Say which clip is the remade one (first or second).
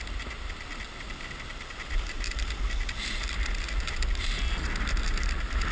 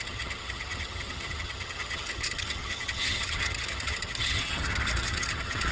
second